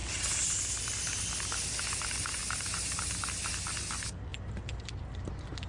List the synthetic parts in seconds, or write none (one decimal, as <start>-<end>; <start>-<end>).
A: 2.4-3.1; 4.3-5.3